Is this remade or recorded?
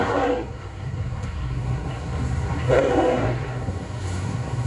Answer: remade